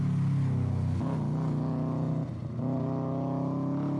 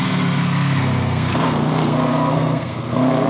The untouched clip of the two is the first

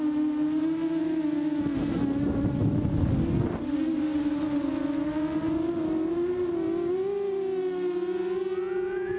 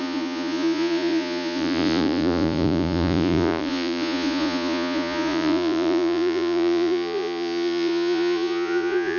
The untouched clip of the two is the first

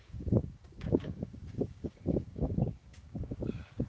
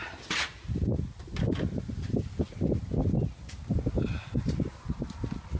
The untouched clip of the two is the second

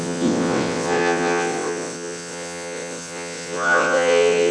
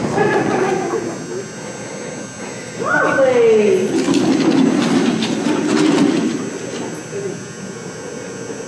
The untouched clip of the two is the second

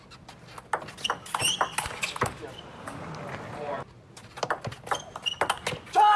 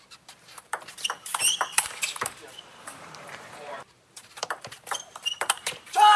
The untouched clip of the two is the first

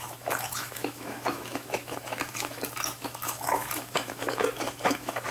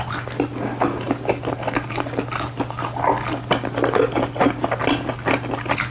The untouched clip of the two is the second